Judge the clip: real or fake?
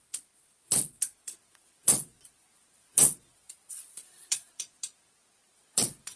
fake